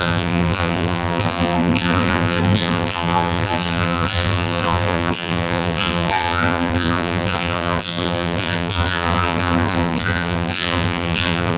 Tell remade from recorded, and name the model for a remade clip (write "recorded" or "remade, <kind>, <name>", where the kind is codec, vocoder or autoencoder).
remade, vocoder, BigVGAN v2